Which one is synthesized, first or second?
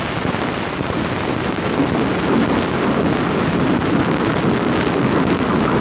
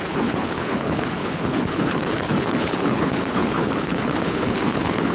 second